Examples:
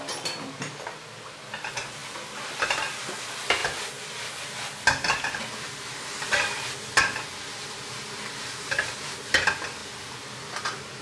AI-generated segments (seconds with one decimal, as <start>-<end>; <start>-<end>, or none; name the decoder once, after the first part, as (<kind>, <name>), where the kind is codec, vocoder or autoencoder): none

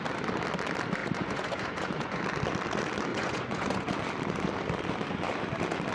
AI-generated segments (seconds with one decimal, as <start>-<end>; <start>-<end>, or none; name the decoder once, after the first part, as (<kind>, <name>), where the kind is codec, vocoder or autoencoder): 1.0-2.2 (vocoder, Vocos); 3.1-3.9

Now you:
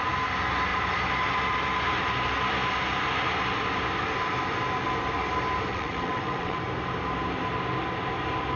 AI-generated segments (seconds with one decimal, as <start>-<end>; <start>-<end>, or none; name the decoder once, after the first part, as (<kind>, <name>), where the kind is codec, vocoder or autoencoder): 5.7-6.6 (vocoder, WaveNeXt)

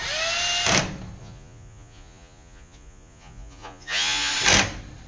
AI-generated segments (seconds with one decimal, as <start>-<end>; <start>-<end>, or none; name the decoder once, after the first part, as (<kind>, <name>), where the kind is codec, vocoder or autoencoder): 1.2-4.3 (vocoder, Vocos)